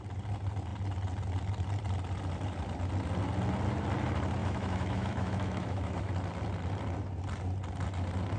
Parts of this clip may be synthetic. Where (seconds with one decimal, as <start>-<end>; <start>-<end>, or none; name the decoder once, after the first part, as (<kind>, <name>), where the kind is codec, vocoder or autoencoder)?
4.4-6.1 (autoencoder, DAC-VAE)